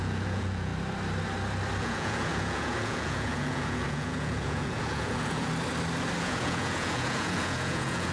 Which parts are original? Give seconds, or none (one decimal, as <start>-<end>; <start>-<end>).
0.7-1.8; 5.5-6.2